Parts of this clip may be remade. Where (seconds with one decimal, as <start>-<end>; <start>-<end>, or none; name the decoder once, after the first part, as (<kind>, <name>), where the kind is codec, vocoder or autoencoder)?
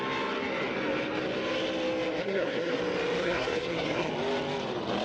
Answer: 2.2-2.8 (codec, SNAC); 3.2-4.1